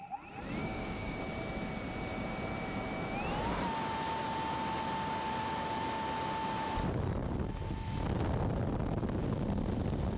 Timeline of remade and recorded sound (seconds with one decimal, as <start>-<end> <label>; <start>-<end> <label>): 0.0-0.6 recorded; 0.6-1.2 remade; 1.2-10.2 recorded

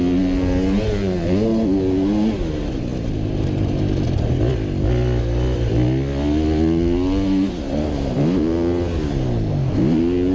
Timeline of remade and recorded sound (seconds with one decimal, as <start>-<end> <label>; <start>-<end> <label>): 0.0-10.3 recorded